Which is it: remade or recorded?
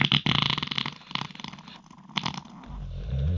recorded